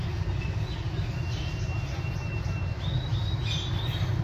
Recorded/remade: recorded